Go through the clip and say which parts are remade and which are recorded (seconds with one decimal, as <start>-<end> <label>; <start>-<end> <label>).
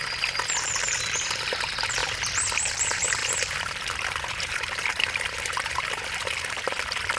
0.0-0.6 recorded; 0.6-2.0 remade; 2.0-2.6 recorded; 2.6-7.2 remade